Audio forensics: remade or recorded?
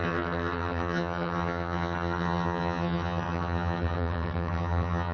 remade